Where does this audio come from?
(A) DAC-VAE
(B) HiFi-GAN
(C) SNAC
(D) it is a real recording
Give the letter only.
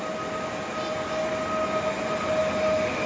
D